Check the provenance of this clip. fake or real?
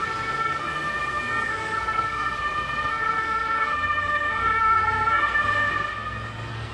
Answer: fake